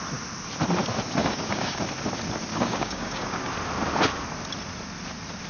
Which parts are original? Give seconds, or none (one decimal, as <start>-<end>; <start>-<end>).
0.0-1.2; 1.8-2.5; 3.5-5.5